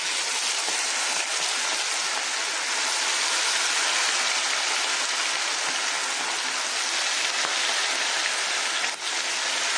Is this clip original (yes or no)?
yes